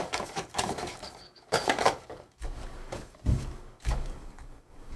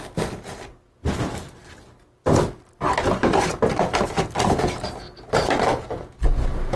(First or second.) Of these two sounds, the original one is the second